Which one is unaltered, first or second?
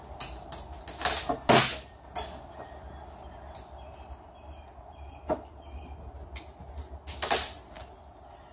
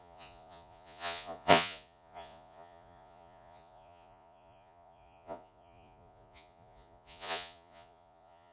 first